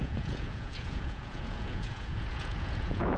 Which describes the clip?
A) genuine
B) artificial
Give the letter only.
B